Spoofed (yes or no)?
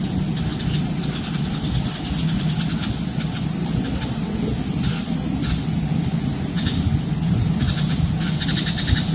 no